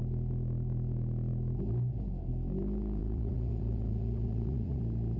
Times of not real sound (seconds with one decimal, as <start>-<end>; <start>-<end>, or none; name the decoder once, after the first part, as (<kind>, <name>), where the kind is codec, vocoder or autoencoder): 3.0-4.8 (vocoder, Vocos)